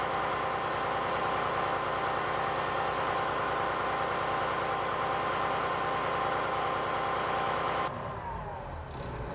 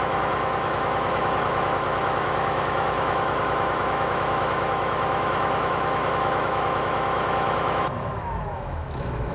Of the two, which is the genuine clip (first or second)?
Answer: first